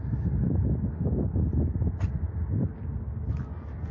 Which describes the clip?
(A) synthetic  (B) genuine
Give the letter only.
B